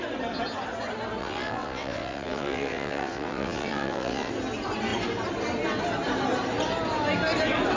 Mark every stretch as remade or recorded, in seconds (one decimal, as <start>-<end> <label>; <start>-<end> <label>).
0.0-1.2 recorded; 1.2-4.3 remade; 4.3-7.8 recorded